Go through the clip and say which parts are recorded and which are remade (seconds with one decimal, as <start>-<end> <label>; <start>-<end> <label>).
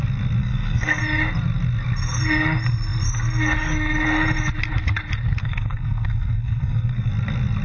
0.0-0.4 recorded; 0.4-1.0 remade; 1.0-5.4 recorded; 5.4-7.1 remade; 7.1-7.6 recorded